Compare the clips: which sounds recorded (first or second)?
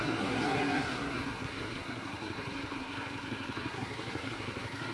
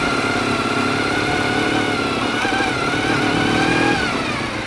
second